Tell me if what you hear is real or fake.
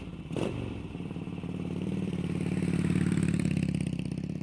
fake